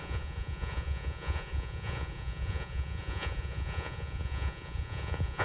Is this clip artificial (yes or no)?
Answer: yes